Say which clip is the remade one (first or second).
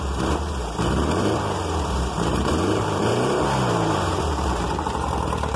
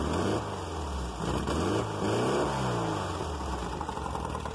first